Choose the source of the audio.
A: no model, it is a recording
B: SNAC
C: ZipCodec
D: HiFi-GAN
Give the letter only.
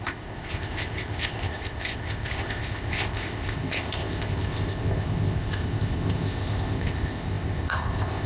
C